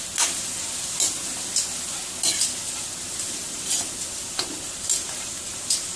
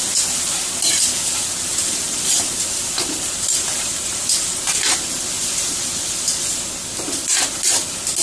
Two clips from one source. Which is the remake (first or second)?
second